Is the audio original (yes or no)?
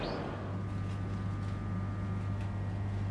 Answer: yes